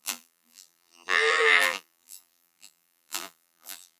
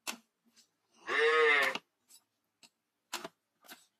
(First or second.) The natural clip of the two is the second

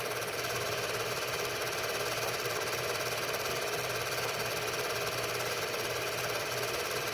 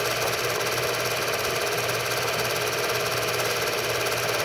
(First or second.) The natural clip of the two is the second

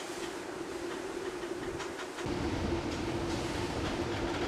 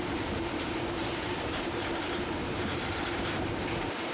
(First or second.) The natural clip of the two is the first